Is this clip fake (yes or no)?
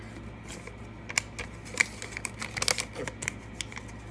no